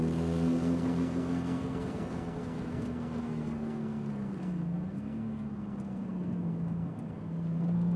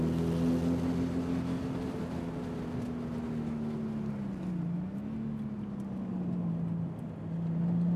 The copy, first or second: first